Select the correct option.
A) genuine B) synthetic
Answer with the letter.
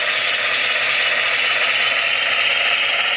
A